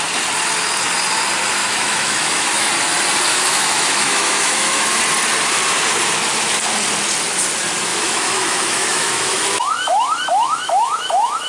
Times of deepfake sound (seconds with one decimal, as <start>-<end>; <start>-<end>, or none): 1.6-2.7; 3.3-5.0; 7.9-11.5